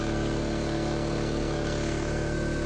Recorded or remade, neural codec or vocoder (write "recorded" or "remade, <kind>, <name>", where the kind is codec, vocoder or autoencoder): remade, codec, SNAC